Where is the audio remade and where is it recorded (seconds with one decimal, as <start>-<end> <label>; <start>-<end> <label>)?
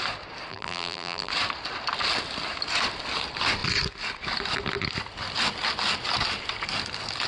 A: 0.0-0.5 recorded; 0.5-1.3 remade; 1.3-7.3 recorded